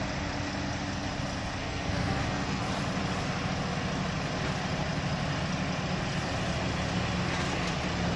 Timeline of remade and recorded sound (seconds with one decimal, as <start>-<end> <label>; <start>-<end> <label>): 0.0-1.6 recorded; 1.6-2.6 remade; 2.6-8.2 recorded